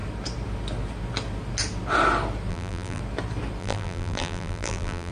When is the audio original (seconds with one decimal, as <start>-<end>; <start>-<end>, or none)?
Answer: 0.0-2.5; 3.0-3.6